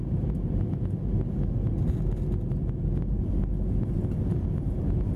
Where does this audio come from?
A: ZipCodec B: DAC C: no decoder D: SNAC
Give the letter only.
C